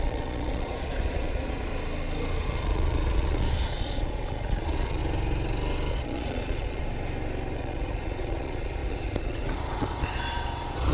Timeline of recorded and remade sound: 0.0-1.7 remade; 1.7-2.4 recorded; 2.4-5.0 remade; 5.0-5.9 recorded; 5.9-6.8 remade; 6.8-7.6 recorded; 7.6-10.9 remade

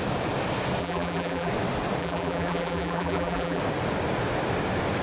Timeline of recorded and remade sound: 0.0-0.8 recorded; 0.8-1.5 remade; 1.5-2.0 recorded; 2.0-3.6 remade; 3.6-5.0 recorded

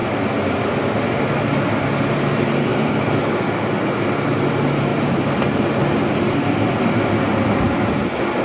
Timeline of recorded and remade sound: 0.0-2.7 recorded; 2.7-3.2 remade; 3.2-4.9 recorded; 4.9-5.6 remade; 5.6-8.4 recorded

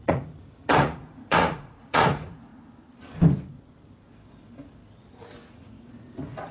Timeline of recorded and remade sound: 0.0-2.5 remade; 2.5-5.6 recorded; 5.6-6.5 remade

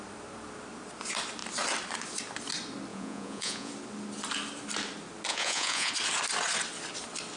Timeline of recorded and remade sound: 0.0-2.9 recorded; 2.9-3.7 remade; 3.7-5.3 recorded; 5.3-5.9 remade; 5.9-7.4 recorded

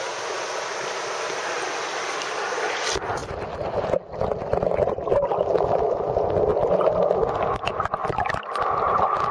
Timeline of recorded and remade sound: 0.0-9.3 recorded

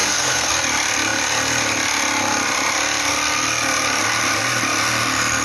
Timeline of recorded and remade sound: 0.0-0.5 remade; 0.5-5.4 recorded

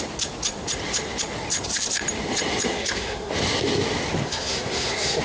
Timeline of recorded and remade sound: 0.0-2.7 recorded; 2.7-3.3 remade; 3.3-4.2 recorded; 4.2-5.2 remade